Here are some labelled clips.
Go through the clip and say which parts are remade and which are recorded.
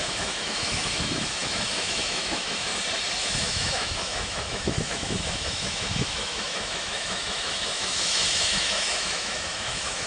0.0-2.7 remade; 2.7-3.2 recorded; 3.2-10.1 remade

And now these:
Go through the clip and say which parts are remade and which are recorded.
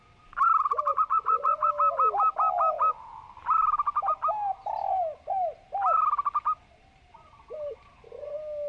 0.0-0.9 recorded; 0.9-1.7 remade; 1.7-8.7 recorded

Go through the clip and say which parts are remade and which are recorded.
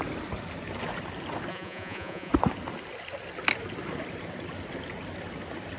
0.0-1.5 recorded; 1.5-2.3 remade; 2.3-5.8 recorded